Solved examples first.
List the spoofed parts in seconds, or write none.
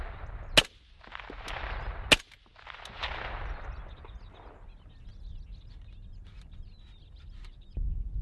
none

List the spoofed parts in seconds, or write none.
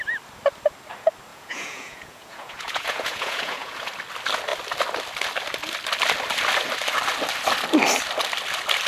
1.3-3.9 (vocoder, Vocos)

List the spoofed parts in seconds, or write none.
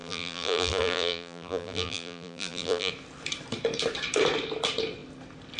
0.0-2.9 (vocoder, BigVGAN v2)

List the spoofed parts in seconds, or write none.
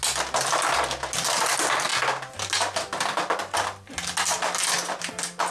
none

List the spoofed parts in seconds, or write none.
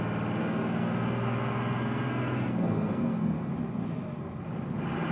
0.4-3.5 (codec, SNAC)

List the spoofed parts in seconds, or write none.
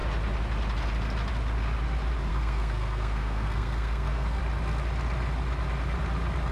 2.3-4.4 (codec, SNAC)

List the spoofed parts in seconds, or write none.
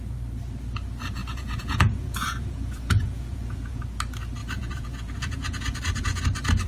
1.2-3.8 (vocoder, Vocos); 4.4-6.2